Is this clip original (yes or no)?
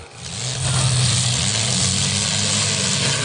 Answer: yes